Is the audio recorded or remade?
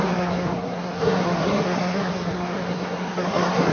remade